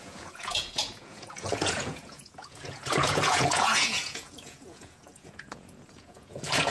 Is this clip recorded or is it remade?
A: remade